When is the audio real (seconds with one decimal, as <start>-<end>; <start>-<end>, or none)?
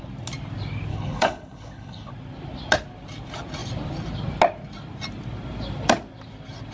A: 0.0-0.9; 2.1-6.7